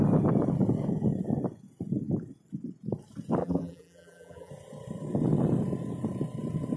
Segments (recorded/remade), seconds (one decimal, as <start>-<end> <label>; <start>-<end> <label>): 0.0-3.4 recorded; 3.4-4.5 remade; 4.5-6.8 recorded